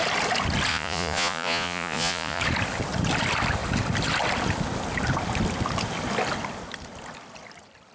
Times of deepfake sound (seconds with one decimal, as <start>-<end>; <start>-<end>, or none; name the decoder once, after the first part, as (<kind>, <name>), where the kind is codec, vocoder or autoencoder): 0.7-2.4 (vocoder, Vocos)